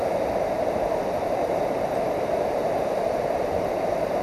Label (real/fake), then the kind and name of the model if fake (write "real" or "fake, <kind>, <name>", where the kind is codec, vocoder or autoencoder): fake, vocoder, BigVGAN v2